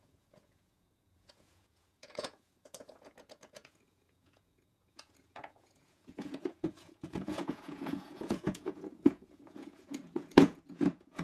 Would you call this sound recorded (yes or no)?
no